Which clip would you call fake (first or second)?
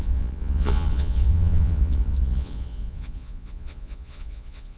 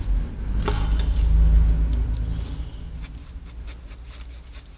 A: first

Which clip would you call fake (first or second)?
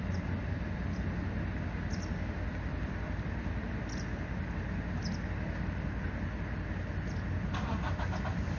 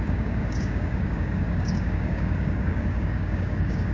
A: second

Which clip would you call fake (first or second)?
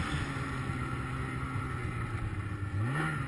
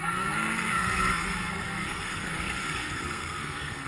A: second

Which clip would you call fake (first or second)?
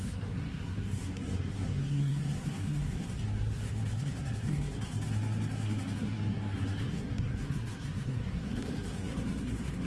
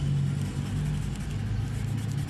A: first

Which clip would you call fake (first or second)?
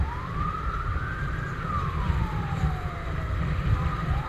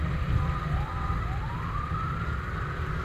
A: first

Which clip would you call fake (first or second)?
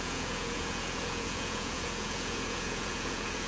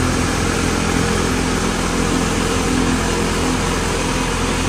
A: first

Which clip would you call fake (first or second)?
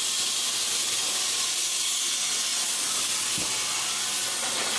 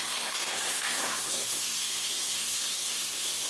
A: second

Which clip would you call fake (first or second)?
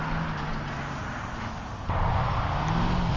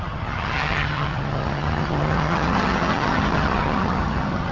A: second